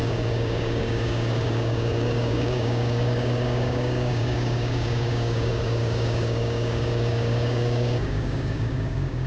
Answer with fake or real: fake